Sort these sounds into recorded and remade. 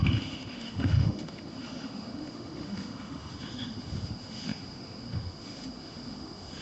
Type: remade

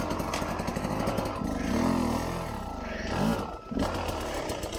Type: recorded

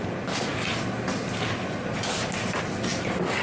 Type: recorded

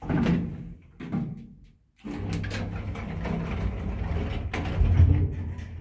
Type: recorded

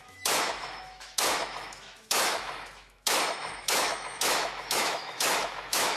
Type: remade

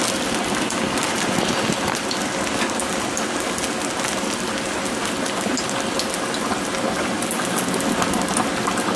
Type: recorded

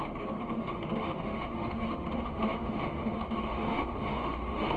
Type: remade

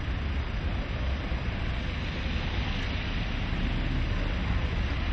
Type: recorded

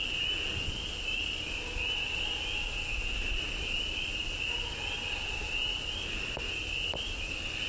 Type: recorded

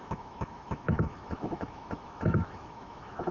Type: remade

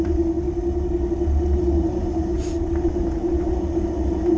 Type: recorded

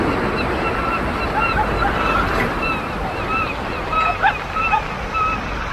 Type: recorded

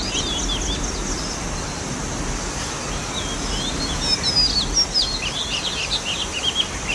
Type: recorded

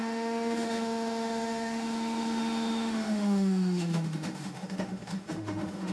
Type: remade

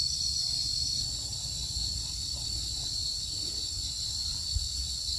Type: recorded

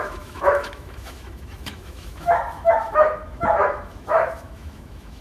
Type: remade